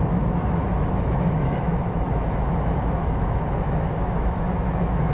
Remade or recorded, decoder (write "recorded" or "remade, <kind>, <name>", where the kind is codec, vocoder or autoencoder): remade, autoencoder, DAC-VAE